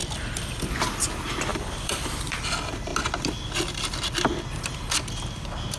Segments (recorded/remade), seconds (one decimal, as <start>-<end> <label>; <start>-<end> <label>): 0.0-0.7 remade; 0.7-1.5 recorded; 1.5-2.4 remade; 2.4-5.8 recorded

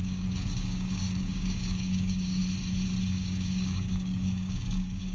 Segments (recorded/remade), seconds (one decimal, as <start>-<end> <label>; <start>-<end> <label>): 0.0-2.4 remade; 2.4-3.1 recorded; 3.1-5.1 remade

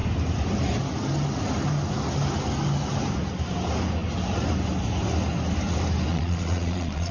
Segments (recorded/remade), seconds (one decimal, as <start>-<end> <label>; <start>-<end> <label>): 0.0-6.1 recorded; 6.1-7.1 remade

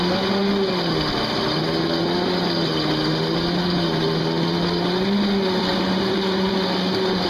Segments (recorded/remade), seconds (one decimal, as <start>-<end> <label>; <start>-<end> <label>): 0.0-5.7 recorded; 5.7-6.5 remade; 6.5-7.3 recorded